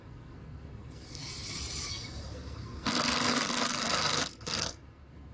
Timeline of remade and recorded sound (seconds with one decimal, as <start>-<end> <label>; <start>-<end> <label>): 0.0-1.3 remade; 1.3-1.9 recorded; 1.9-5.3 remade